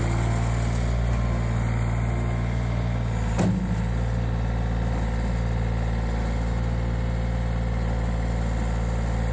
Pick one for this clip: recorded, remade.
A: recorded